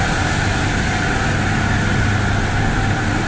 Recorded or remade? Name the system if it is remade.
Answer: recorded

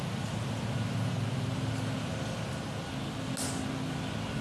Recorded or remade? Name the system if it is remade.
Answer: recorded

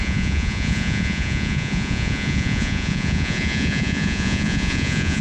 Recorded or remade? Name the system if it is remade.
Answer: remade, vocoder, Vocos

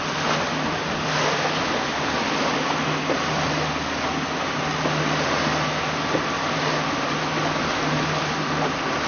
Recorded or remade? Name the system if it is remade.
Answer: recorded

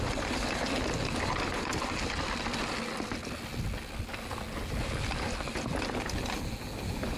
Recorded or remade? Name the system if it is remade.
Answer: recorded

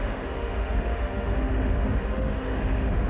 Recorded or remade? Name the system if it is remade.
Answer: remade, autoencoder, DAC-VAE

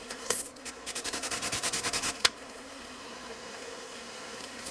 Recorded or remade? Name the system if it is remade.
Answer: remade, codec, SNAC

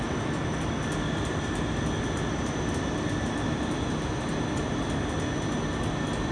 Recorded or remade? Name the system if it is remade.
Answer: recorded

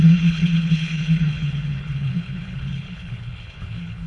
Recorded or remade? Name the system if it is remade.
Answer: remade, codec, HILCodec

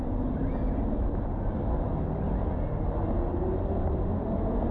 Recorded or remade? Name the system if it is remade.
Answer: recorded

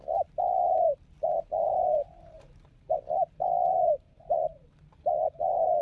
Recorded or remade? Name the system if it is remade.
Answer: remade, vocoder, BigVGAN v2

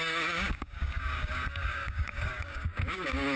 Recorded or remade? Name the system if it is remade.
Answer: remade, codec, DAC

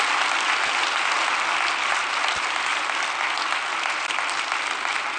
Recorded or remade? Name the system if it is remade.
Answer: recorded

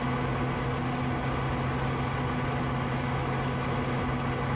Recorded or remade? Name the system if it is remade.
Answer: recorded